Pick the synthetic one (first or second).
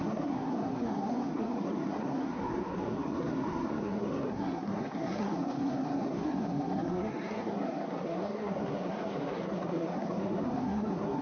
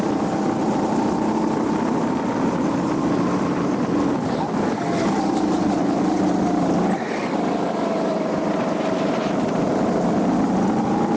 first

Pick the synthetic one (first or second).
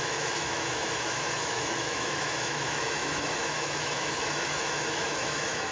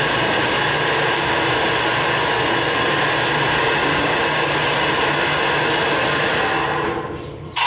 first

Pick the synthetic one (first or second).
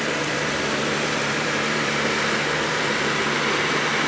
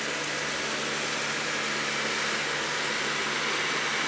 first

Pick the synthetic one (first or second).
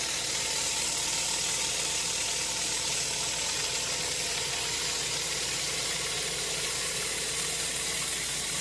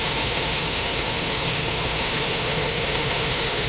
second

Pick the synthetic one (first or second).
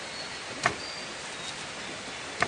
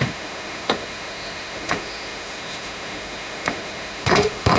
second